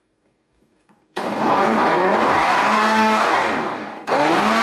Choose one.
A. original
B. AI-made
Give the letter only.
B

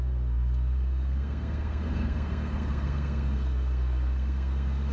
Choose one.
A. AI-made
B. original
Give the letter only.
A